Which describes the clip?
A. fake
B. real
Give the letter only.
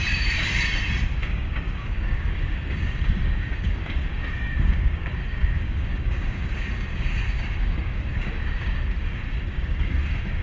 A